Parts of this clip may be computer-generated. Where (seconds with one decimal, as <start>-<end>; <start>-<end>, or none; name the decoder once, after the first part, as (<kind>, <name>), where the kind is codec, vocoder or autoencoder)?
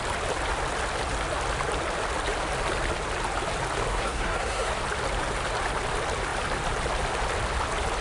3.9-4.7 (codec, SNAC)